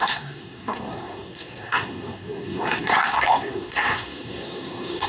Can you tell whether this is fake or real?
fake